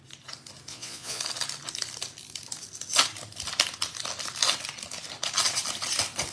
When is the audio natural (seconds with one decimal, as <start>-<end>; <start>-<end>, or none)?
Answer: 0.0-0.7; 1.2-6.3